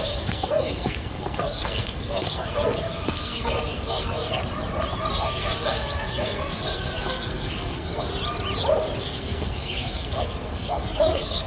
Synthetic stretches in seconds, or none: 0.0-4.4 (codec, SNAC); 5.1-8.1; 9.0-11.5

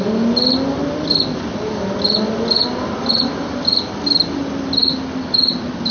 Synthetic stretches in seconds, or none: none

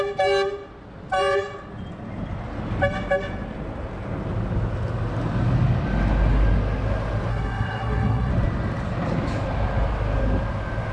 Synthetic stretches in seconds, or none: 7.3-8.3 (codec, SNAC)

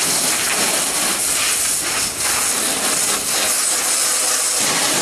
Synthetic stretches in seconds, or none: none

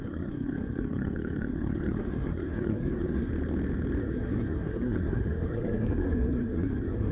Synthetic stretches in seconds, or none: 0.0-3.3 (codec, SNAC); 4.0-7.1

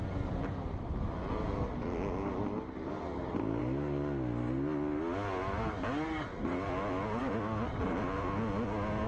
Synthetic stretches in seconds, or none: none